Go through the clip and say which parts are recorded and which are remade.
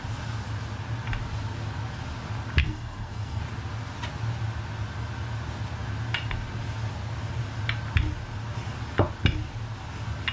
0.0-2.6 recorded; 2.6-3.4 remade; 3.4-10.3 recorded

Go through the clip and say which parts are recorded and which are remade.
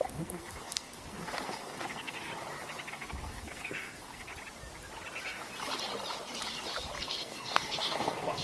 0.0-2.3 remade; 2.3-2.9 recorded; 2.9-4.3 remade; 4.3-7.0 recorded; 7.0-8.4 remade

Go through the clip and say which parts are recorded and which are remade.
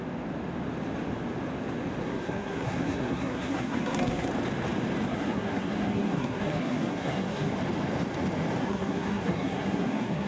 0.0-2.0 recorded; 2.0-4.3 remade; 4.3-5.1 recorded; 5.1-7.5 remade; 7.5-8.6 recorded; 8.6-10.3 remade